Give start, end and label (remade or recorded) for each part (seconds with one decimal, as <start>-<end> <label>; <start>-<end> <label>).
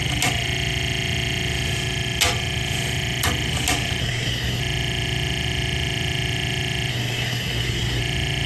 0.0-4.0 recorded; 4.0-4.6 remade; 4.6-6.9 recorded; 6.9-8.0 remade; 8.0-8.5 recorded